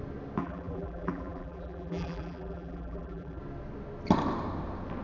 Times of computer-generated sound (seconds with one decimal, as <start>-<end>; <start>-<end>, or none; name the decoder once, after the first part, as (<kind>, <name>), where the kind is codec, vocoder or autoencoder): 0.4-3.4 (vocoder, BigVGAN v2)